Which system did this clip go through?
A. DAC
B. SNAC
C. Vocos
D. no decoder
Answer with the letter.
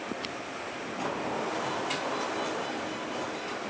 D